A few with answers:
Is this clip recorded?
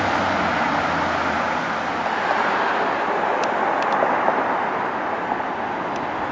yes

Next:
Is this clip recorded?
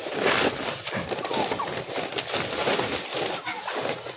yes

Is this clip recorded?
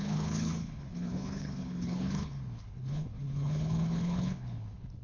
no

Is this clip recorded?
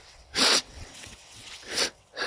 no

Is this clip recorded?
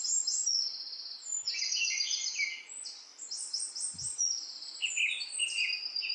yes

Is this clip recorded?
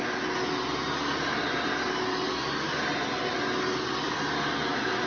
yes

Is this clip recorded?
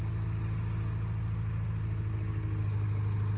yes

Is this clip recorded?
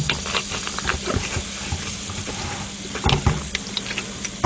yes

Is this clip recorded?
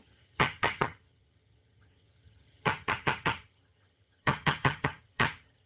no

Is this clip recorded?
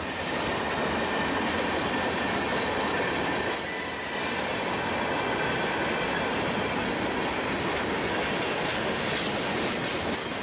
yes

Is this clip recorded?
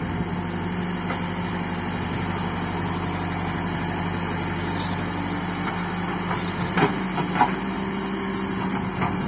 yes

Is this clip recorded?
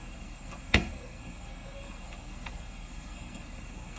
no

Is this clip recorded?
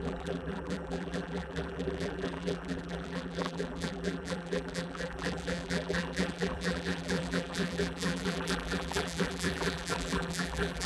no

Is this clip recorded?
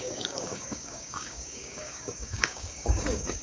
no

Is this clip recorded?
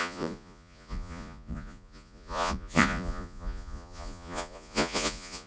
no